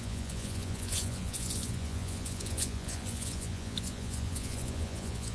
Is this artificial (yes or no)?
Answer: yes